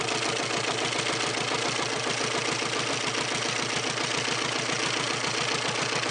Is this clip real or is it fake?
real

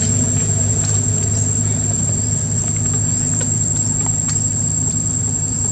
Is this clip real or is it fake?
real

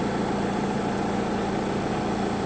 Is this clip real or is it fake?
real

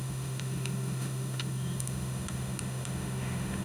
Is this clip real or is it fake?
fake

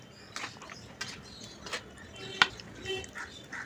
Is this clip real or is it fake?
real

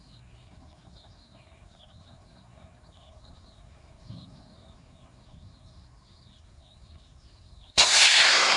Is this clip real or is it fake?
fake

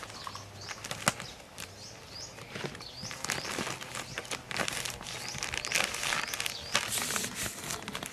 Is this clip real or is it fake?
real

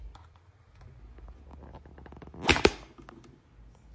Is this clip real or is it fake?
real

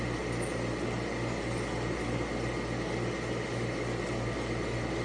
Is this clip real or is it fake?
real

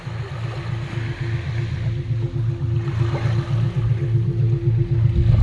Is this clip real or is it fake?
real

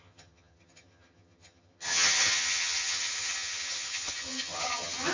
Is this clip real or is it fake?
fake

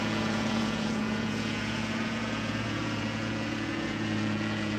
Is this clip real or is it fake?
fake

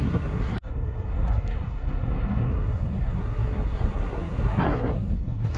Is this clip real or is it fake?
fake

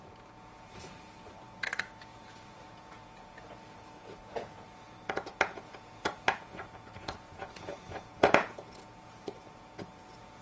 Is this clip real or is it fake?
fake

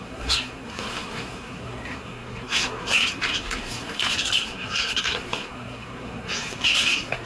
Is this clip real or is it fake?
fake